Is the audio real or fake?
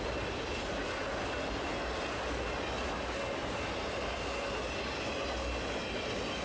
real